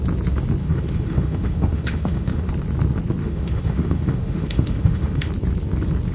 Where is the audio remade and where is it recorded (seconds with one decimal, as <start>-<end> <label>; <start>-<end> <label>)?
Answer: 0.0-0.6 recorded; 0.6-2.5 remade; 2.5-3.2 recorded; 3.2-5.3 remade; 5.3-6.1 recorded